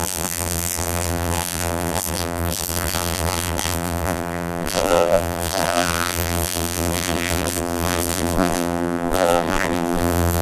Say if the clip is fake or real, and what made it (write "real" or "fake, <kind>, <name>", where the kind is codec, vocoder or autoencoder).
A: fake, vocoder, BigVGAN v2